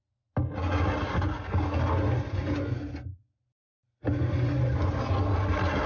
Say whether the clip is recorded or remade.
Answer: recorded